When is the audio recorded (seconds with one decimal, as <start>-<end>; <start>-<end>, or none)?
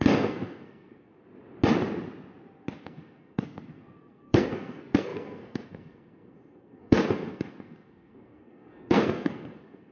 1.1-2.8